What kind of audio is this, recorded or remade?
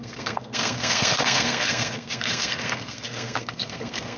remade